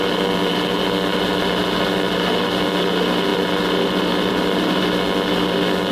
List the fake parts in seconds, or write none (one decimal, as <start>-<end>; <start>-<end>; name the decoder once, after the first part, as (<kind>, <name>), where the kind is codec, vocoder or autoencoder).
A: none